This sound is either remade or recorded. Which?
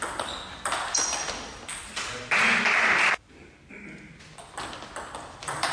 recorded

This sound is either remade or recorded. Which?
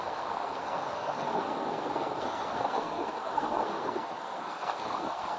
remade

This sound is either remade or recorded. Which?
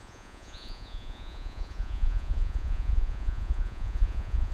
remade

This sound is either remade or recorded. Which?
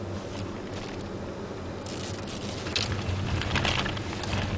recorded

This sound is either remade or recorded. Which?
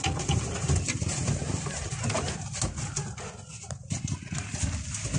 recorded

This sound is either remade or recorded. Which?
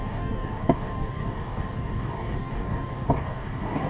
remade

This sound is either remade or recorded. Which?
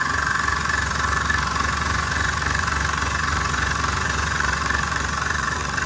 remade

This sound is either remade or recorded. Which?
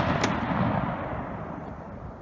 recorded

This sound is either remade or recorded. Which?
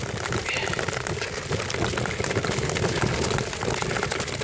recorded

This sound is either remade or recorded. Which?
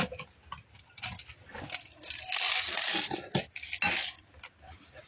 recorded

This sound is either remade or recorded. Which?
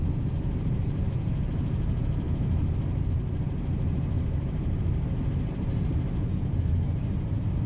remade